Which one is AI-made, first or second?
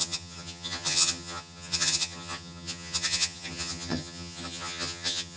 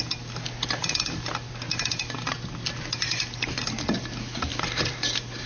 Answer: first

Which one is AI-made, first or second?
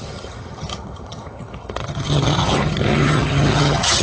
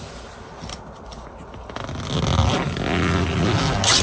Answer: first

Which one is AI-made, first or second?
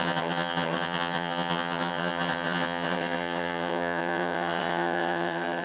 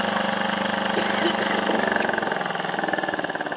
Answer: first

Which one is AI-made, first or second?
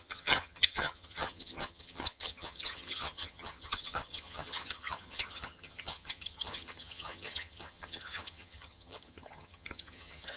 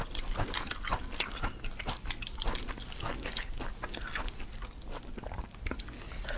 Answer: first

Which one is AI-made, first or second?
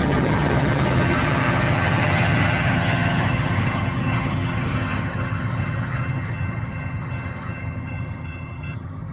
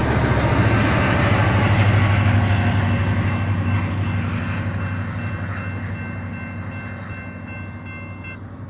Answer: first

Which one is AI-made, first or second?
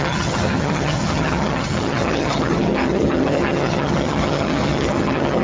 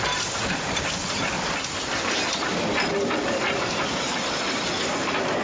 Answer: first